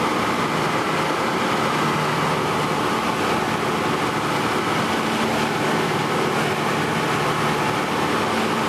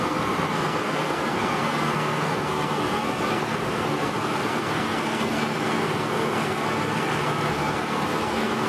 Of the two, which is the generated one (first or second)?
second